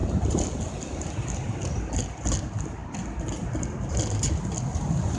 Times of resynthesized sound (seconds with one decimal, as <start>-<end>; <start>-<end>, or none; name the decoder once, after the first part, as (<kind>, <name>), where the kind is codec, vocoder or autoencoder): 0.0-0.7 (vocoder, BigVGAN v2)